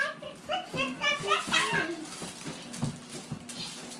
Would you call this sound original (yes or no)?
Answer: yes